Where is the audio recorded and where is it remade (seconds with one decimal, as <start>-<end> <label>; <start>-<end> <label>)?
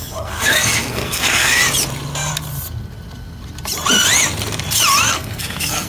0.0-1.6 remade; 1.6-5.1 recorded; 5.1-5.9 remade